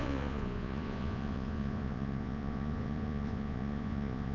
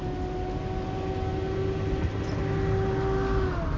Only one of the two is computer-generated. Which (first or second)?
first